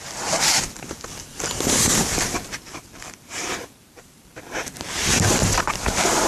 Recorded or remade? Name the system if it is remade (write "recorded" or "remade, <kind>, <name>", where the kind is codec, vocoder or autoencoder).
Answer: remade, vocoder, BigVGAN v2